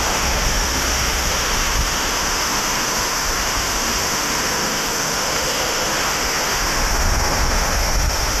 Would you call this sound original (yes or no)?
no